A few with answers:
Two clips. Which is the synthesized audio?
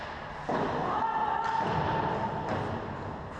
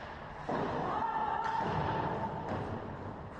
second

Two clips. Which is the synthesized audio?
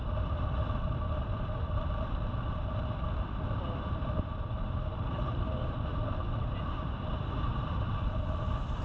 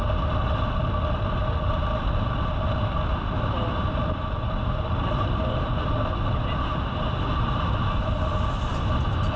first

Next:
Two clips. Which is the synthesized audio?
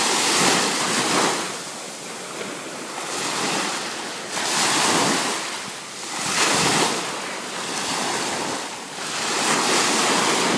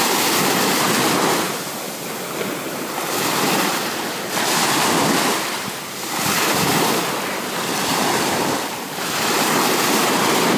second